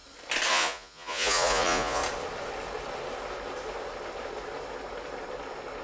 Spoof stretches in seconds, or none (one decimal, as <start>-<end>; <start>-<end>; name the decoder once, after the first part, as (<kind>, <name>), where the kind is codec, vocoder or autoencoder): 0.5-2.0 (vocoder, Vocos)